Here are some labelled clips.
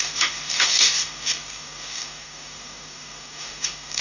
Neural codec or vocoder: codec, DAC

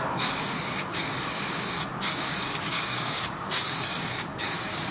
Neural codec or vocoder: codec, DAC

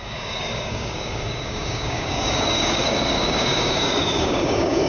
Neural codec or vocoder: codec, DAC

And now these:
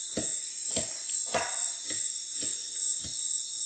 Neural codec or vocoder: none